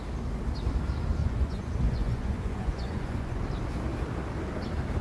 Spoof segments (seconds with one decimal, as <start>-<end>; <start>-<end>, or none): 1.2-3.4